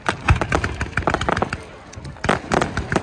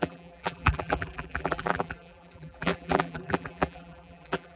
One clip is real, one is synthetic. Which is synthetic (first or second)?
second